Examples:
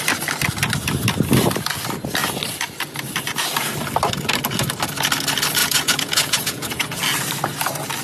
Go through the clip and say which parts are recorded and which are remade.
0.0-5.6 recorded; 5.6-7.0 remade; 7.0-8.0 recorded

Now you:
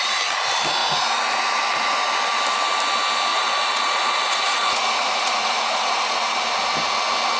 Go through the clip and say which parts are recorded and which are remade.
0.0-3.3 recorded; 3.3-6.2 remade; 6.2-7.4 recorded

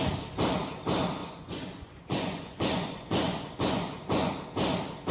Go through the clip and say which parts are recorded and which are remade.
0.0-1.2 recorded; 1.2-4.3 remade; 4.3-5.1 recorded

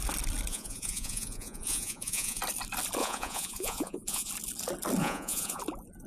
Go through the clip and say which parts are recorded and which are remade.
0.0-0.5 recorded; 0.5-2.4 remade; 2.4-3.0 recorded; 3.0-4.3 remade; 4.3-5.0 recorded; 5.0-5.6 remade; 5.6-6.1 recorded